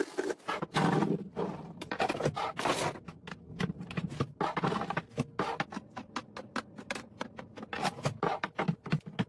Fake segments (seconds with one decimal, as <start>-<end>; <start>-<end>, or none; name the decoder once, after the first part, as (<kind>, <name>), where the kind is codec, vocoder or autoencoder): 1.5-2.0 (vocoder, BigVGAN v2); 3.5-4.2